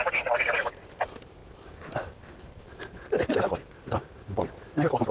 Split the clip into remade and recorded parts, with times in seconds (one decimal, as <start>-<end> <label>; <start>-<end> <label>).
0.0-1.4 recorded; 1.4-4.5 remade; 4.5-5.1 recorded